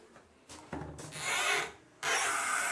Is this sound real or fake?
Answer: real